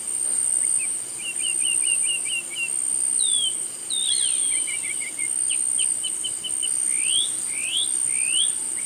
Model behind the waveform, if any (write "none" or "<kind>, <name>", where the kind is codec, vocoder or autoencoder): none